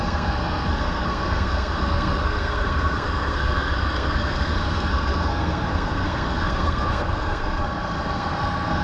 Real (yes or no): no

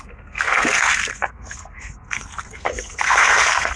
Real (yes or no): no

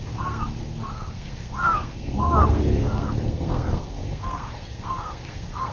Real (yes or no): no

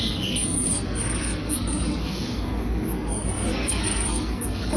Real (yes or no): no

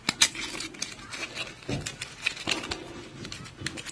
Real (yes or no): yes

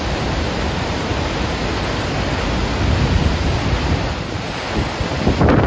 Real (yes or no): yes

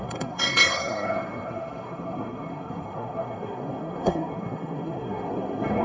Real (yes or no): no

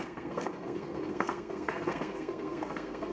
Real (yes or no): no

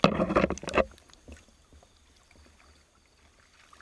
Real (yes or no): yes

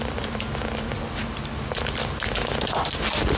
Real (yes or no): yes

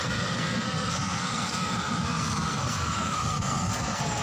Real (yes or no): no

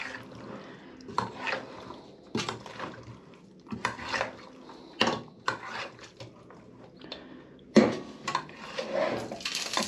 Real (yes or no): yes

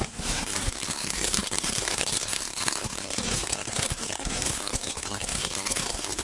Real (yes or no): no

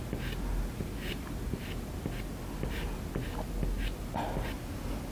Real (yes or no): yes